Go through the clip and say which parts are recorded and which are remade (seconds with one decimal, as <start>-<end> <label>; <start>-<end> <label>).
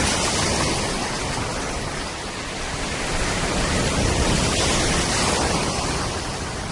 0.0-6.7 recorded